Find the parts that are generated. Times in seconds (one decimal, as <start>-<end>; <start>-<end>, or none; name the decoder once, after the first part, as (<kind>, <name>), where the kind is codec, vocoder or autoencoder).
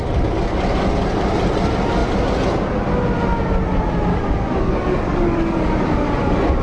4.1-5.7 (codec, DAC)